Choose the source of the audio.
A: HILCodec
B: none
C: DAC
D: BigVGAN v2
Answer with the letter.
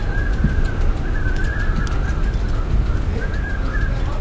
B